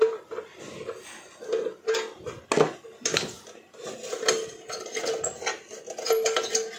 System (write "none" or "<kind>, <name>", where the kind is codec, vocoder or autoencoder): none